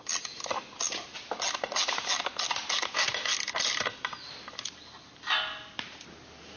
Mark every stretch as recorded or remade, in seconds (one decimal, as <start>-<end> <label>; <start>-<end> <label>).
0.0-6.6 recorded

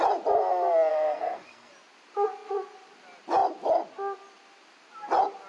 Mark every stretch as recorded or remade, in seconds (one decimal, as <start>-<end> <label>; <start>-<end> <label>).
0.0-0.9 recorded; 0.9-1.7 remade; 1.7-5.5 recorded